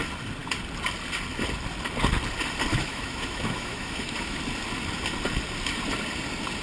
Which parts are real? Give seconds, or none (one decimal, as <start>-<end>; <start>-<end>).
0.0-2.7; 4.4-6.6